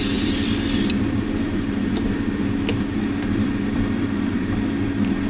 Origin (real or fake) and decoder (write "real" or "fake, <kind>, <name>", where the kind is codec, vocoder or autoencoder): fake, vocoder, BigVGAN v2